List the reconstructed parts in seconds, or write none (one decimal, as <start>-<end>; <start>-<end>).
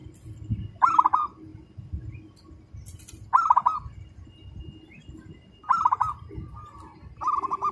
none